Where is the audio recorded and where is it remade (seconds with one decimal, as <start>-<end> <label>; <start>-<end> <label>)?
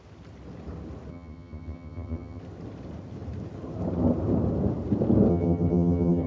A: 0.0-1.1 recorded; 1.1-2.4 remade; 2.4-5.3 recorded; 5.3-6.3 remade